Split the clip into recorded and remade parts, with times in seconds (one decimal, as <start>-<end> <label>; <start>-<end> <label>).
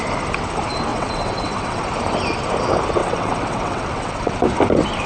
0.0-0.9 recorded; 0.9-1.8 remade; 1.8-3.0 recorded; 3.0-4.4 remade; 4.4-5.1 recorded